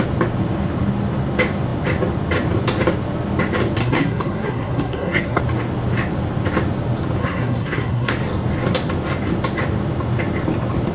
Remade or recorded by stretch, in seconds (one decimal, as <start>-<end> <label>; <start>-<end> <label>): 0.0-3.8 recorded; 3.8-5.4 remade; 5.4-7.2 recorded; 7.2-8.1 remade; 8.1-10.9 recorded